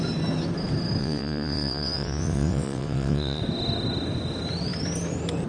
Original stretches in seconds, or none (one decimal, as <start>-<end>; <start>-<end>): 0.0-1.0; 3.4-5.5